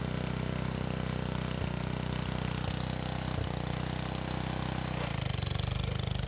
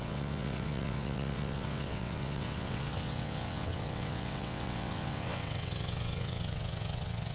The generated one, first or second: second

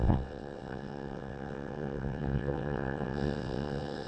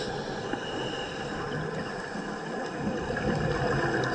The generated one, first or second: first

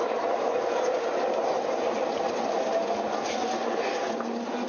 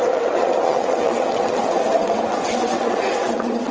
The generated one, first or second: second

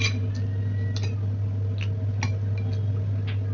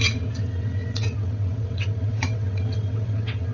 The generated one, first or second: second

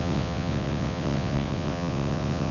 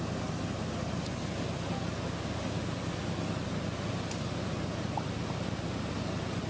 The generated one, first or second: first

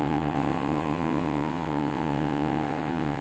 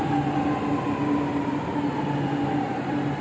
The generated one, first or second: first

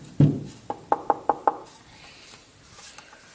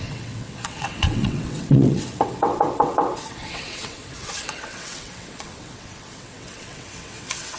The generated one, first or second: second